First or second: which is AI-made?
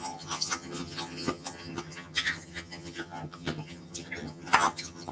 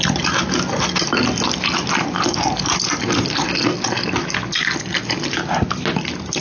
first